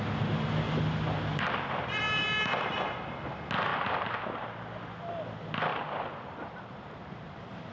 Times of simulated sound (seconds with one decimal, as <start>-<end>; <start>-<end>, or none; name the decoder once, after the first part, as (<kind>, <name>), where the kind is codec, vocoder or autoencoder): 3.7-4.2 (vocoder, BigVGAN v2); 5.7-7.7